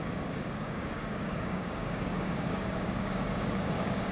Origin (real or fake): fake